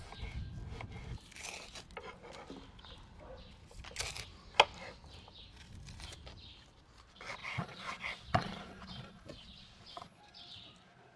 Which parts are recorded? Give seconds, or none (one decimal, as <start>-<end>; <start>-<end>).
0.0-7.4; 10.2-11.2